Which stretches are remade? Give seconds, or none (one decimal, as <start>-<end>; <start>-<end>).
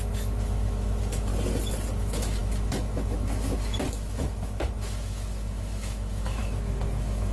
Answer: 0.0-1.3; 2.0-7.3